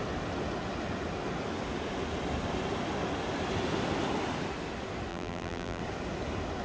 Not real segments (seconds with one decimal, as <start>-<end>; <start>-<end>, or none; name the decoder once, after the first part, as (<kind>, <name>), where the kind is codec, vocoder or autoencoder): 5.1-5.8 (vocoder, BigVGAN v2)